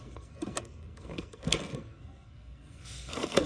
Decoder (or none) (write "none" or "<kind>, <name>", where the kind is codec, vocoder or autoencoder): codec, SNAC